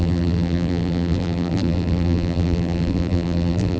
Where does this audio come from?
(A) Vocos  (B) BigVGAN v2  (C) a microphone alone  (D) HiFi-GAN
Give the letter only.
B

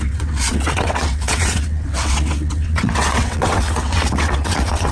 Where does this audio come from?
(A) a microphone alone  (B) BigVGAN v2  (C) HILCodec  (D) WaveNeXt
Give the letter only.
D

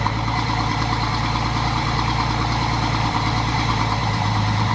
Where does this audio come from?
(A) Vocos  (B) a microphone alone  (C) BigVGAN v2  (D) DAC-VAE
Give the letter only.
C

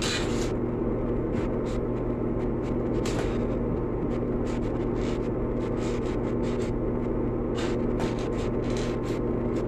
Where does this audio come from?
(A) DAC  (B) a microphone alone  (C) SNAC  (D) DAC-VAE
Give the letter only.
B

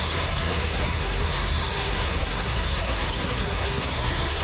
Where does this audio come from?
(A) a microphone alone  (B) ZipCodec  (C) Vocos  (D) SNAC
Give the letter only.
D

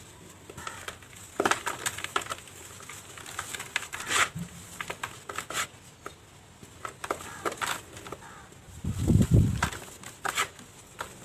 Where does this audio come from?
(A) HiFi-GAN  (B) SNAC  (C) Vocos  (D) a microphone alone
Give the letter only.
D